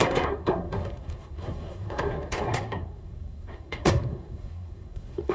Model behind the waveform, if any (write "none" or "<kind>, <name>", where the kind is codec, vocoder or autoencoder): codec, SNAC